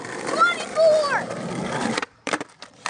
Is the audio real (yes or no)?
no